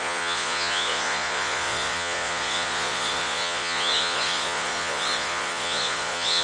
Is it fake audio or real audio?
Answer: fake